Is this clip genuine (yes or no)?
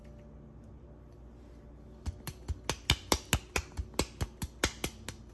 yes